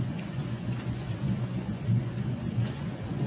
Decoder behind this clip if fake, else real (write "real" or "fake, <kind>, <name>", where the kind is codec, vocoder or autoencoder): fake, vocoder, Vocos